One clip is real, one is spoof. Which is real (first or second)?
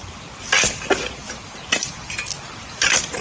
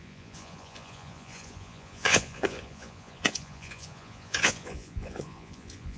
first